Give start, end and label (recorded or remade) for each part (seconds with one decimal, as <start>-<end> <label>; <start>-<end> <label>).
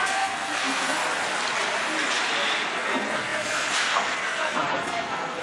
0.0-1.0 remade; 1.0-2.7 recorded; 2.7-5.4 remade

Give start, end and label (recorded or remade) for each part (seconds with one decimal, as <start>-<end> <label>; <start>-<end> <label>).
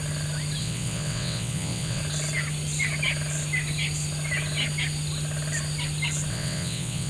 0.0-0.6 recorded; 0.6-2.0 remade; 2.0-6.3 recorded; 6.3-7.1 remade